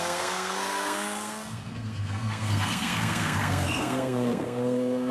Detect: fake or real fake